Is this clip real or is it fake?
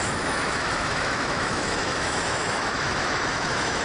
fake